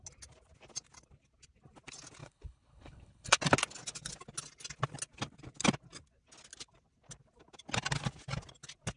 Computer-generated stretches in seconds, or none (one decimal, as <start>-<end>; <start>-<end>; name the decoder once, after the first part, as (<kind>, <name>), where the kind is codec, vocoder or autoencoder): 2.2-3.4 (codec, HILCodec)